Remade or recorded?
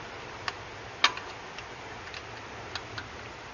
recorded